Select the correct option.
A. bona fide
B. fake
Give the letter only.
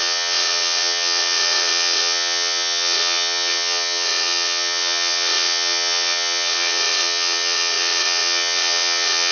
B